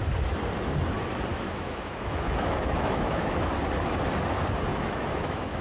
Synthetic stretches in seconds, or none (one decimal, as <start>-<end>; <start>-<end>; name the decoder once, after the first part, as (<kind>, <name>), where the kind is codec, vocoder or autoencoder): 1.3-3.5 (autoencoder, DAC-VAE); 4.7-5.6